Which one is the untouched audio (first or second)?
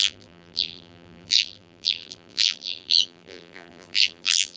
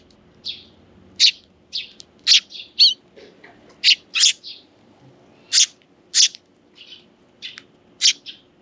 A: second